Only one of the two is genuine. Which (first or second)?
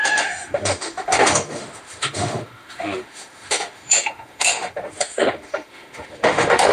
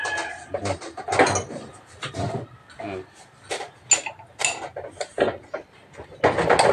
second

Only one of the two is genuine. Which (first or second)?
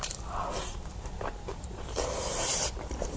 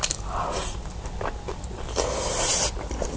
second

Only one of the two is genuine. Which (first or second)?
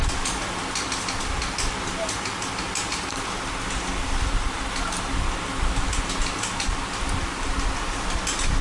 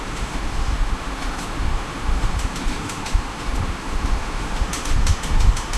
first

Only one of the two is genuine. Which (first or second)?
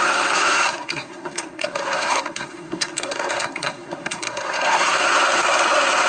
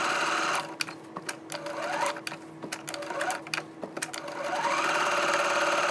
second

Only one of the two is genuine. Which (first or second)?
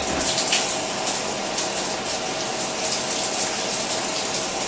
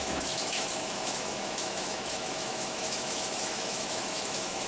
first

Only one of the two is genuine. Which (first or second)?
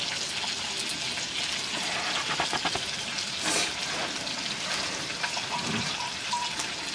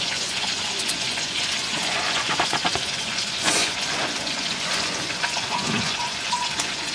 first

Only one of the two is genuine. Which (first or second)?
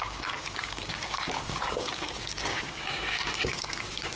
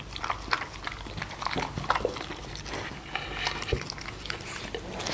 second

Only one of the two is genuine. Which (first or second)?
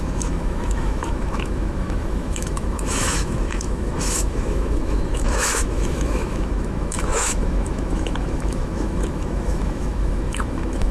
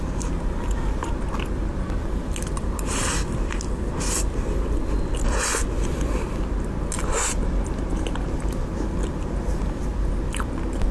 second